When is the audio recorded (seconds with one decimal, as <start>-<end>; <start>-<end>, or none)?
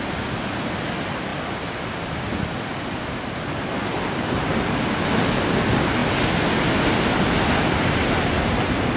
0.0-9.0